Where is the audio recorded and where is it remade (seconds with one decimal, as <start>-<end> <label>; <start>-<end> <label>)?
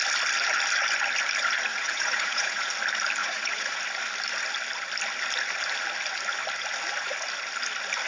0.0-1.7 recorded; 1.7-2.7 remade; 2.7-3.2 recorded; 3.2-3.8 remade; 3.8-8.1 recorded